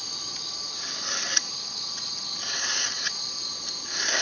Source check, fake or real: real